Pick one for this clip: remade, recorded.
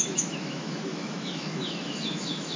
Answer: remade